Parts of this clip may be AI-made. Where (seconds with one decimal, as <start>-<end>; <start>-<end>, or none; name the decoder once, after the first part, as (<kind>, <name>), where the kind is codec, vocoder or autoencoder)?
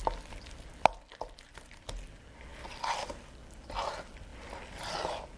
none